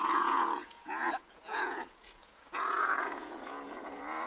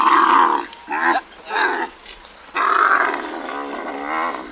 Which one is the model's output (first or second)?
first